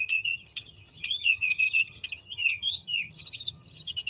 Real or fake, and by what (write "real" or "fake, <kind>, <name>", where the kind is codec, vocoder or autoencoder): fake, vocoder, HiFi-GAN